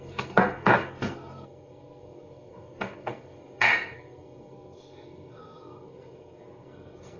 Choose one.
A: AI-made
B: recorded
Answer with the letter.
A